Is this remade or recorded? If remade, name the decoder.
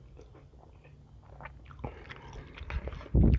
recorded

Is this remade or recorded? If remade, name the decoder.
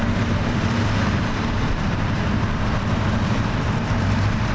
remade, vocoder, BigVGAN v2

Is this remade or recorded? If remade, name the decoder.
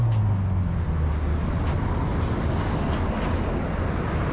recorded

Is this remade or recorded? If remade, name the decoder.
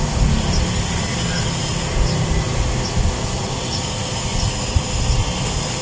recorded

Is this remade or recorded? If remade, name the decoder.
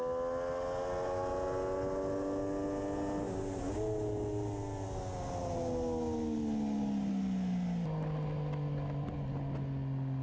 recorded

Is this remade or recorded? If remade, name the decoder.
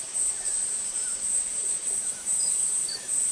remade, vocoder, BigVGAN v2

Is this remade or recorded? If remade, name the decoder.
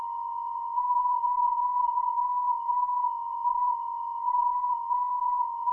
remade, codec, SNAC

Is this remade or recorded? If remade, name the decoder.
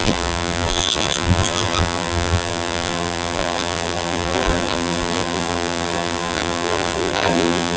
remade, vocoder, BigVGAN v2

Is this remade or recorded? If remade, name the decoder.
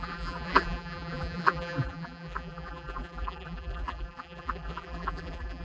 remade, vocoder, BigVGAN v2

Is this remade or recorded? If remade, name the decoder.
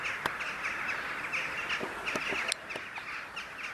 recorded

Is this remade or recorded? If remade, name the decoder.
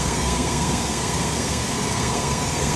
remade, codec, SNAC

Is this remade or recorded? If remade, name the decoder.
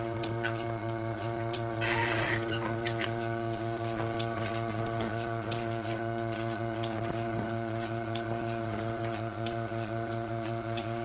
remade, vocoder, Vocos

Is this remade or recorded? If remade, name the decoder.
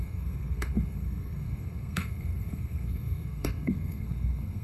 remade, codec, SNAC